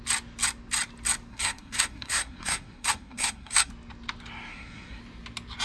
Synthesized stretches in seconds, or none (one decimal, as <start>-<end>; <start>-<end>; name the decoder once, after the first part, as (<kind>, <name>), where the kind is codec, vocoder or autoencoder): 1.3-3.7 (codec, SNAC); 4.5-5.0